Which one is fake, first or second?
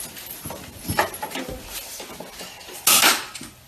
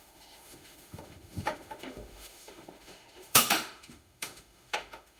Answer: second